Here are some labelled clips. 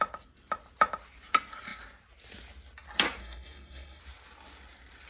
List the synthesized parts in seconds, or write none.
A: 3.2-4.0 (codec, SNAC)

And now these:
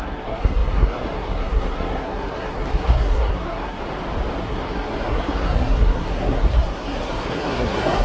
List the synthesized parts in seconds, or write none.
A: 0.0-3.8 (codec, SNAC); 4.4-8.0

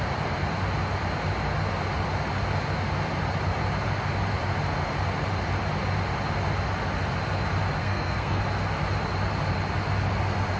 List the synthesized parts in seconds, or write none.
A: 7.8-8.4 (codec, SNAC)

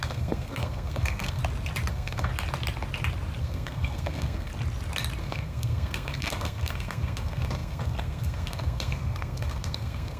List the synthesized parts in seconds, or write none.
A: 0.0-1.4 (codec, SNAC); 1.9-2.3; 3.4-4.5; 5.2-10.2

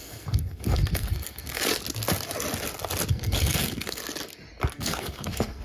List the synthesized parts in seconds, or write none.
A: 0.0-1.7 (codec, SNAC); 3.1-4.0; 4.7-5.6

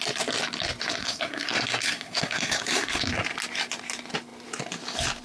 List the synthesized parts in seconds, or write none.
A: 1.0-3.0 (codec, SNAC)

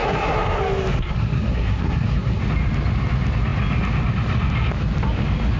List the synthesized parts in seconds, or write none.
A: 0.0-0.6 (codec, SNAC); 1.0-2.4

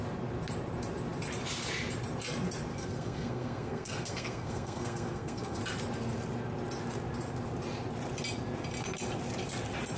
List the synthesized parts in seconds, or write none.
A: 2.7-5.6 (codec, SNAC)